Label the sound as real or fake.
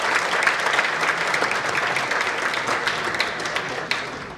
real